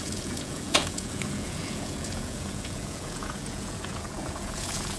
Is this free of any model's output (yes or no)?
no